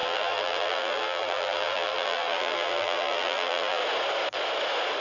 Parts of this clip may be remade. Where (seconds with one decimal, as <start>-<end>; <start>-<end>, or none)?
0.0-3.8